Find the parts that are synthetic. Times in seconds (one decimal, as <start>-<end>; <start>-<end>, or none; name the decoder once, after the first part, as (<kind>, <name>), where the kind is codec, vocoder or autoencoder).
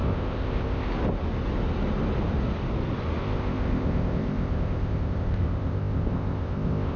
0.0-0.9 (codec, ZipCodec); 3.2-7.0